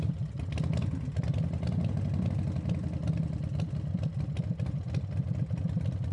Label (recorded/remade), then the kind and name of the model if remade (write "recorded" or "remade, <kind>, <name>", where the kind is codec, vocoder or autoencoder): recorded